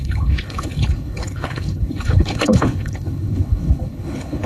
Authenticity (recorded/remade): remade